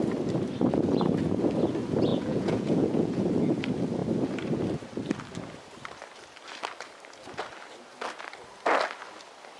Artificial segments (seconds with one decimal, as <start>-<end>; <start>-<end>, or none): 2.1-3.2